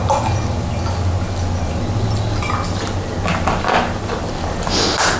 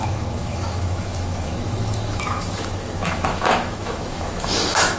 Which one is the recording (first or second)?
first